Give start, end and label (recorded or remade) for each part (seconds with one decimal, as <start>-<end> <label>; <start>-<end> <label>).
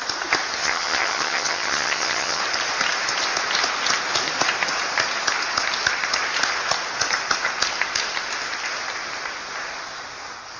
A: 0.0-0.6 recorded; 0.6-2.4 remade; 2.4-10.6 recorded